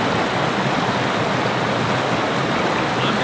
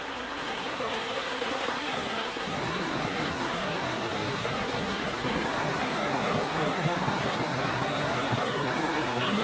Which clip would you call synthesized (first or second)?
second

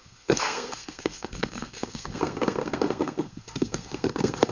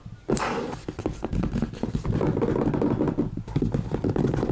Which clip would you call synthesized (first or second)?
first